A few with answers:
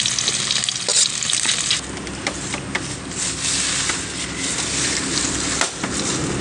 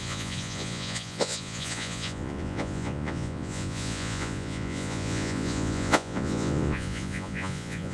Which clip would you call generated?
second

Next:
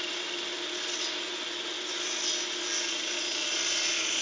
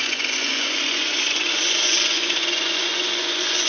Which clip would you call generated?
second